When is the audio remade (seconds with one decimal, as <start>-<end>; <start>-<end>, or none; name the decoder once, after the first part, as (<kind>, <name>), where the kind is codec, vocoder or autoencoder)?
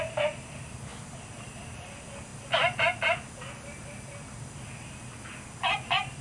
none